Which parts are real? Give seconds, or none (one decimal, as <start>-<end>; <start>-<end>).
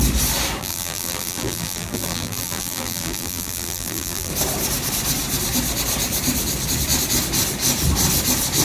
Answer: 0.0-0.6; 4.3-8.6